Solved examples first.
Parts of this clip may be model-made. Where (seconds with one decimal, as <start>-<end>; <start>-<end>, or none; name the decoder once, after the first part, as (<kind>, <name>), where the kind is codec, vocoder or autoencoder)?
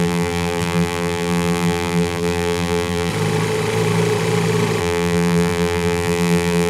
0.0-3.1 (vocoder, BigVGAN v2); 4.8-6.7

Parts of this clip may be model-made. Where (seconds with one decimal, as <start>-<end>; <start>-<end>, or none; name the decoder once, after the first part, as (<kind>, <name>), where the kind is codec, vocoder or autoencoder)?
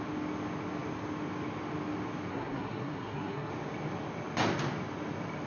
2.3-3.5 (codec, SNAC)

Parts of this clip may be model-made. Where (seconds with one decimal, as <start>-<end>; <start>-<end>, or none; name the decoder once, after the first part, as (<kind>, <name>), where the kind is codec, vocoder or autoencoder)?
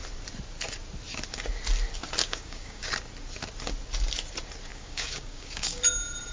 2.2-2.9 (codec, DAC); 4.7-5.8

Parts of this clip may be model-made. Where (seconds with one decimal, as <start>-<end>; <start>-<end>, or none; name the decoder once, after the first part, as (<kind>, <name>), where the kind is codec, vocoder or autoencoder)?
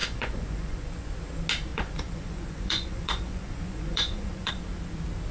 0.0-1.1 (vocoder, Vocos); 1.7-4.5